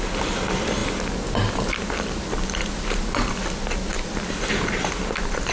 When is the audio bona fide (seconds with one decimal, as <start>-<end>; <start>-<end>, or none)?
0.0-5.5